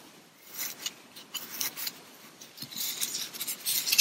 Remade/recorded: recorded